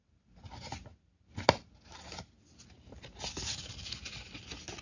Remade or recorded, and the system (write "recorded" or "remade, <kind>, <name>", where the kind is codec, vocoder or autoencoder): recorded